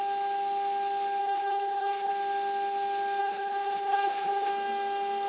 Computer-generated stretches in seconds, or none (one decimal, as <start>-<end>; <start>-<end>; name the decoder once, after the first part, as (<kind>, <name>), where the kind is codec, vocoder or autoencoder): 1.2-2.1 (codec, HILCodec); 3.2-4.5